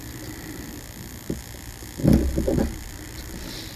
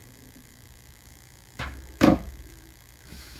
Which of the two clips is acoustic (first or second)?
first